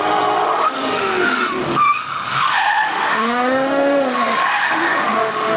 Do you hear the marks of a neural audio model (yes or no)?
yes